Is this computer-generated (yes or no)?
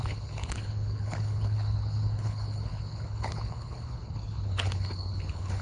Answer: yes